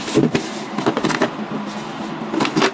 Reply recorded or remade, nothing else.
recorded